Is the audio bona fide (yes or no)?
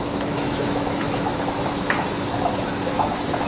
no